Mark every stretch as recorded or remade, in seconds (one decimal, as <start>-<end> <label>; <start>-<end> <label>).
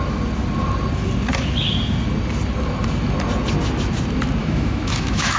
0.0-4.4 recorded; 4.4-5.4 remade